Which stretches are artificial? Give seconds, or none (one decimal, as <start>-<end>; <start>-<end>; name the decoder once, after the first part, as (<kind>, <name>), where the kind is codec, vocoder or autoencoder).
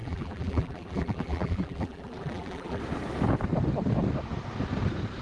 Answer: 0.0-2.8 (vocoder, BigVGAN v2)